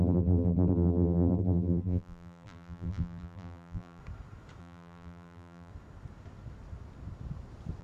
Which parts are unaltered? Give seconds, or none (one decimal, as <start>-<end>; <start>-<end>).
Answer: 4.0-4.6; 5.7-7.8

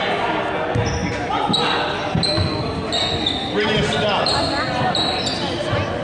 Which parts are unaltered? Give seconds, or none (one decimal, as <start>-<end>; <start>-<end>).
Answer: 0.0-6.0

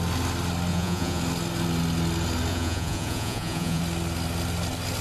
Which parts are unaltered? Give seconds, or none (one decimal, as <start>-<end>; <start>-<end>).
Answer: 0.0-0.7; 1.2-2.5; 3.8-5.0